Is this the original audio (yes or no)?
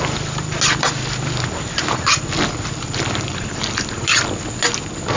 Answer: yes